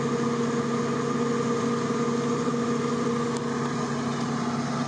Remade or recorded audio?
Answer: recorded